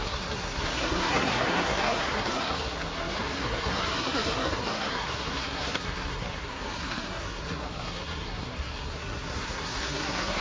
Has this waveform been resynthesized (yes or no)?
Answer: yes